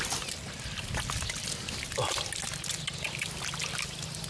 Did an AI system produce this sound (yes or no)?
no